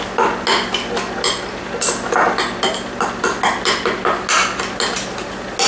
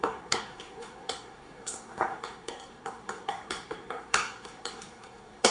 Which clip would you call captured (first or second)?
first